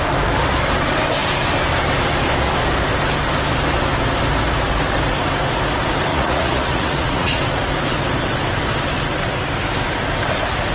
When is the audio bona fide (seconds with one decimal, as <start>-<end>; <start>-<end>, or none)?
0.0-6.1; 7.4-10.7

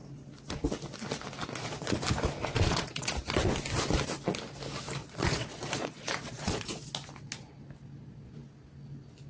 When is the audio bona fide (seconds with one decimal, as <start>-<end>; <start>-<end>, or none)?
0.0-1.4; 2.0-2.4; 3.1-5.0; 6.9-9.3